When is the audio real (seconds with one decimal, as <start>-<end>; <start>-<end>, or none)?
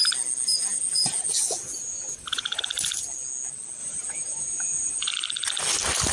0.0-0.5; 2.6-3.8; 5.1-6.1